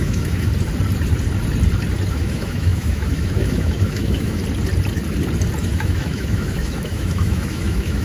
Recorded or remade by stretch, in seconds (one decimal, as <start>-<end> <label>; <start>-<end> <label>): 0.0-0.5 remade; 0.5-2.1 recorded; 2.1-4.4 remade; 4.4-5.6 recorded; 5.6-8.0 remade